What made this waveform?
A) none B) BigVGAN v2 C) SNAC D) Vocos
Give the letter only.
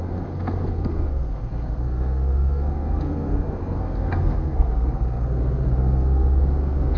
C